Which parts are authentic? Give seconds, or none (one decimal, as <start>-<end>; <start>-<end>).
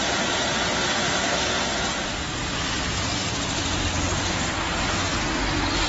0.0-0.7; 1.6-3.2; 5.4-5.9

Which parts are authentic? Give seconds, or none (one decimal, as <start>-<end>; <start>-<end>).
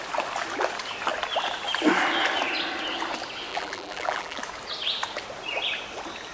0.0-3.5; 4.4-6.3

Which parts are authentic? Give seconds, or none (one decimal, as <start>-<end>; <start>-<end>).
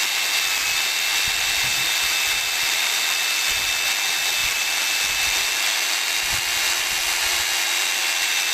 0.0-1.7; 3.5-4.4; 5.0-8.5